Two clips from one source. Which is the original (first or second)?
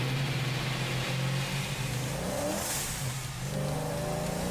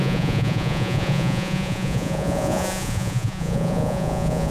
first